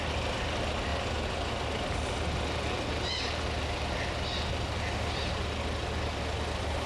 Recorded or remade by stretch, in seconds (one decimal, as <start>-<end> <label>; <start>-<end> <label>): 0.0-6.9 recorded